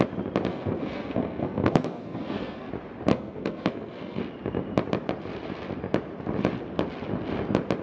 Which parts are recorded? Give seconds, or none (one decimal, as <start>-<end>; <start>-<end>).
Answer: 0.0-0.5; 2.7-3.1; 4.2-7.8